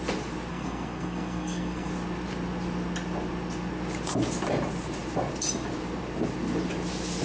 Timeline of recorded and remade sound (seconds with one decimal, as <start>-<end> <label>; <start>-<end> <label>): 0.0-0.5 recorded; 0.5-1.9 remade; 1.9-7.2 recorded